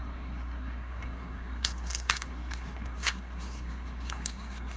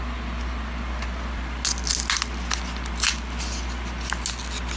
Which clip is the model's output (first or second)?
first